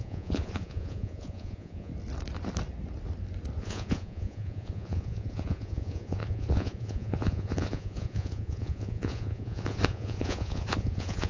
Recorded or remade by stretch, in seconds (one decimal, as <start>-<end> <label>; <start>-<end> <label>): 0.0-1.9 remade; 1.9-3.6 recorded; 3.6-11.3 remade